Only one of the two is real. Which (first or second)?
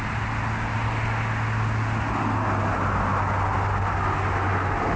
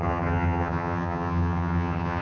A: first